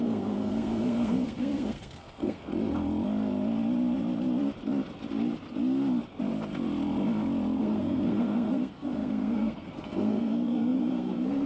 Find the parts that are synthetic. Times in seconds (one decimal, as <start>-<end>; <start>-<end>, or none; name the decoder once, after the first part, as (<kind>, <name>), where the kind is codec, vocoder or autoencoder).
0.0-2.5 (codec, SNAC); 7.6-11.5